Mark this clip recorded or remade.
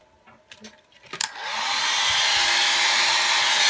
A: recorded